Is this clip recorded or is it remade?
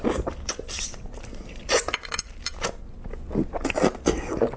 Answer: recorded